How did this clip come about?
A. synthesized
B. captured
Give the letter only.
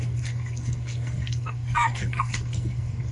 A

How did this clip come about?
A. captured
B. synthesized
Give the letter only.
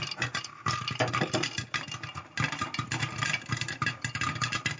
A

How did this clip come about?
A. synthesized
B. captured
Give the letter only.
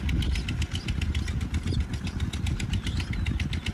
B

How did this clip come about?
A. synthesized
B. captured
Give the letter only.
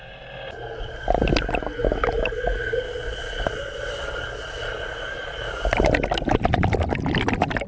B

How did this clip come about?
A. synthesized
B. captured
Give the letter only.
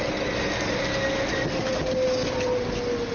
B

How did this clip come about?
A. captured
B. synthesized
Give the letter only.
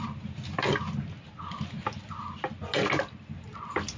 A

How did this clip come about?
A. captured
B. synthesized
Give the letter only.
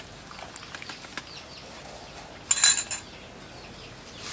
A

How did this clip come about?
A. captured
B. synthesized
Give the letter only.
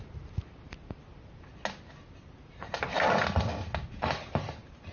A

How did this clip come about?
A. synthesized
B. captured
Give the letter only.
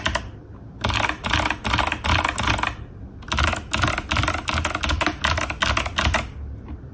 B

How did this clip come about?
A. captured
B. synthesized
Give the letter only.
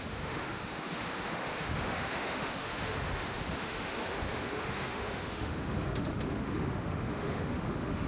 B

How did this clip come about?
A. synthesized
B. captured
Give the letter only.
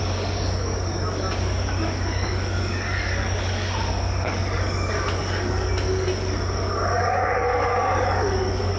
A